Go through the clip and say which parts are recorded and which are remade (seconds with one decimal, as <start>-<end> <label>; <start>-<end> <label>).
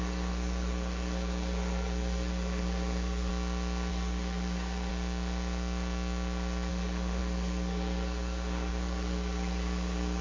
0.0-3.3 remade; 3.3-3.9 recorded; 3.9-4.9 remade; 4.9-6.7 recorded; 6.7-10.2 remade